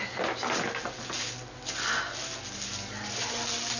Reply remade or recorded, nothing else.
recorded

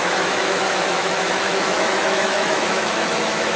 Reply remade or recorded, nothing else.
remade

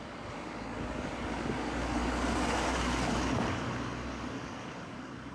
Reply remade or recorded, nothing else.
remade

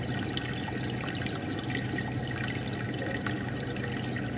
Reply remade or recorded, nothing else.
recorded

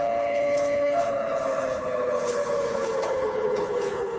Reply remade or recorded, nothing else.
remade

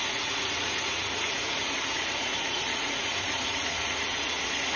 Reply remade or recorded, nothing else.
remade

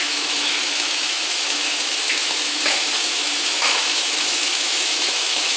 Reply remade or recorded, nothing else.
remade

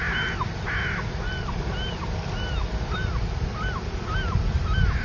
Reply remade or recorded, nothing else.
recorded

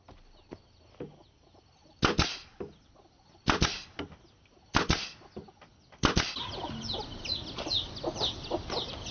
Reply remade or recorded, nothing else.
recorded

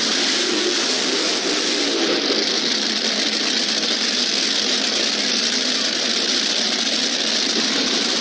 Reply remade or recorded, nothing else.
recorded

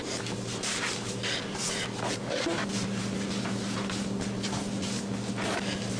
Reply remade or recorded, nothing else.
recorded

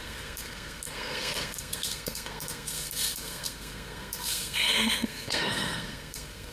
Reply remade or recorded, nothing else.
remade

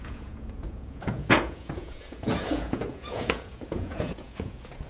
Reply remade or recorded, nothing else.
remade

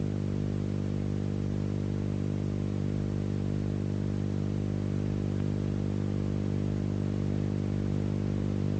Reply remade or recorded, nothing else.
recorded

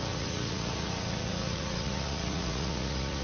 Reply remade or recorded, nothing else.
remade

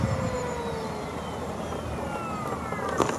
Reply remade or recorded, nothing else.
recorded